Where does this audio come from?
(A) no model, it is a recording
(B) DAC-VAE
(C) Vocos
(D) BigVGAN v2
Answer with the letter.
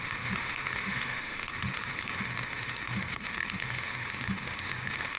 B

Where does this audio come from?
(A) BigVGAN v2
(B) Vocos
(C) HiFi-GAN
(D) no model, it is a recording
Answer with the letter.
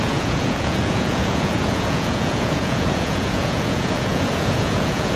B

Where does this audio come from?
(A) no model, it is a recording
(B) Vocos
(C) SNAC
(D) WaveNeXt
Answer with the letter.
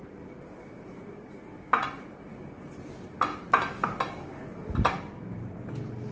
A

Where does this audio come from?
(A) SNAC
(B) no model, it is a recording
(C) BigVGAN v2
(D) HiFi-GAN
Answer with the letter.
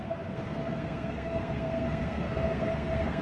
A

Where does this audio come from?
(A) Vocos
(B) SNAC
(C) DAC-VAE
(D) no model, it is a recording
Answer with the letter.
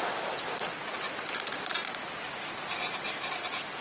D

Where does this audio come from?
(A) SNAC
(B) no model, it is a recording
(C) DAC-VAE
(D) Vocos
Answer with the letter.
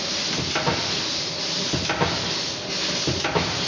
B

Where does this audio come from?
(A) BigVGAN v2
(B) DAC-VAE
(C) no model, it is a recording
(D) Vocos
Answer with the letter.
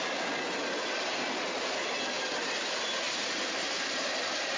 C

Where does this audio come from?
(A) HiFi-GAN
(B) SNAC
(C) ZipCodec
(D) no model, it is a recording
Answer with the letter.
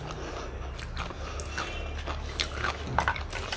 D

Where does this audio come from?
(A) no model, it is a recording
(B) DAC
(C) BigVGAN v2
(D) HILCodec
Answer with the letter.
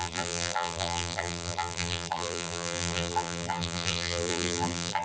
C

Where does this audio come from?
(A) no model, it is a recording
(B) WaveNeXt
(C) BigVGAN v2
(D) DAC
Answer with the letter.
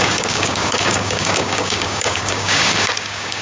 D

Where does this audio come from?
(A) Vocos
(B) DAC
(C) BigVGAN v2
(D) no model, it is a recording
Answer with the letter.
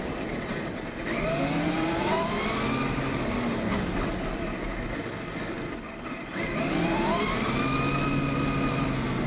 D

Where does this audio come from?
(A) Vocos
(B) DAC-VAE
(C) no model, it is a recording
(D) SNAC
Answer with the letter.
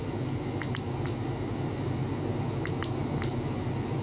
C